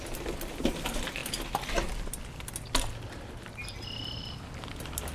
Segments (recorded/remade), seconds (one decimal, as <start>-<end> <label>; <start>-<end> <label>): 0.0-5.1 recorded